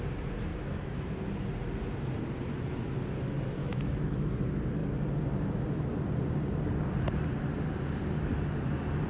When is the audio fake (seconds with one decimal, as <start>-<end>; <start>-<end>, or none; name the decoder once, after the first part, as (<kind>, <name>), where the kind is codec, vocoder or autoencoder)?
0.5-1.1 (autoencoder, DAC-VAE); 3.6-4.2